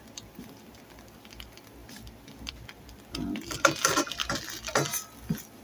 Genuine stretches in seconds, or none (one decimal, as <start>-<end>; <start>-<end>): 4.2-5.6